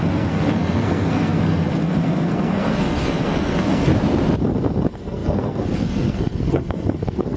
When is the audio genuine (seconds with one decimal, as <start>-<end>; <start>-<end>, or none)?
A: 3.9-4.4